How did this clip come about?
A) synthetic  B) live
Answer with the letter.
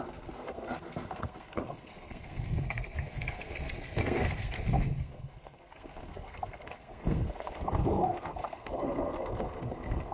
A